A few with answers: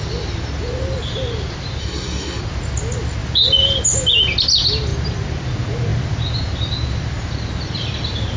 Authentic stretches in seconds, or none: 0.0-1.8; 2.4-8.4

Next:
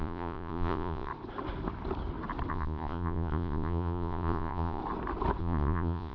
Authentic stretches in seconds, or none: 1.1-2.5; 4.8-5.4

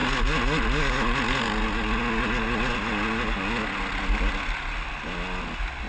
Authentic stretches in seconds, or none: 0.0-5.9